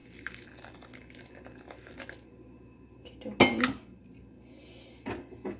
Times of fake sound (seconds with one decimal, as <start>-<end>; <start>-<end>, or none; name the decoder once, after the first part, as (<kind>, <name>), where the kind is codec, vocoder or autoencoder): none